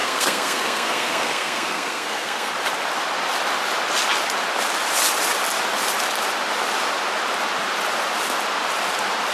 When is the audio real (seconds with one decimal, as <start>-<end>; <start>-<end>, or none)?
2.5-9.3